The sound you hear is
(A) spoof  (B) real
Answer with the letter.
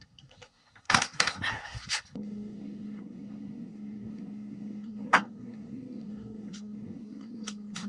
A